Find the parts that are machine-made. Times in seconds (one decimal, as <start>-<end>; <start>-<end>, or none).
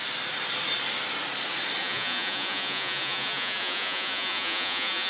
1.8-5.1